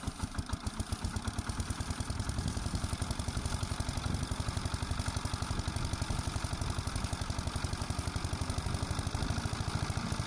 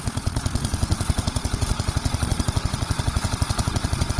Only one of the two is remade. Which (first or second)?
second